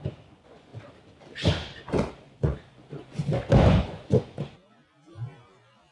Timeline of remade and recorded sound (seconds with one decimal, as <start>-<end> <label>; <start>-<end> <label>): 0.0-0.7 remade; 0.7-2.2 recorded; 2.2-5.9 remade